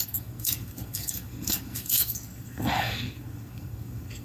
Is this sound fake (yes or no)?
yes